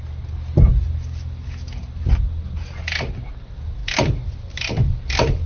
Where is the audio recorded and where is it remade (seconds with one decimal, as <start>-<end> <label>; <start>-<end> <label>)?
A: 0.0-0.7 recorded; 0.7-1.8 remade; 1.8-3.8 recorded; 3.8-5.1 remade; 5.1-5.5 recorded